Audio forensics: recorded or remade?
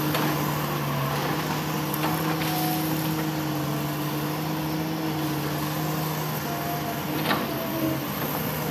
recorded